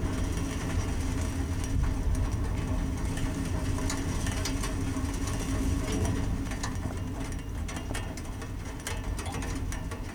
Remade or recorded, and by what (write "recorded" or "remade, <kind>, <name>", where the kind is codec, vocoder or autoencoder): recorded